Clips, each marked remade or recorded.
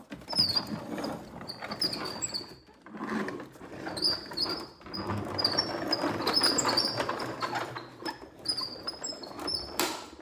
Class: recorded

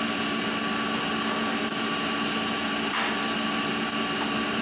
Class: recorded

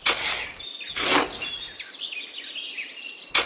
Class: recorded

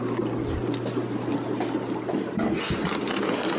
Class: recorded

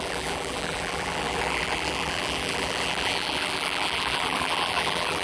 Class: remade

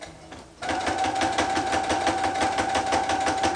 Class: recorded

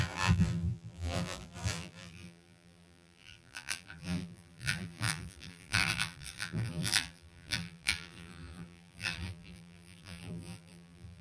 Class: remade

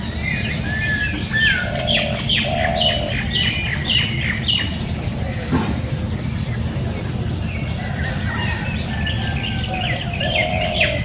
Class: recorded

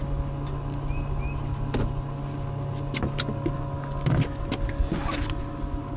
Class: recorded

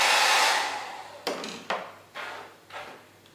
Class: recorded